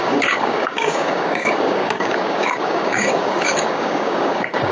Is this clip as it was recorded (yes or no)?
no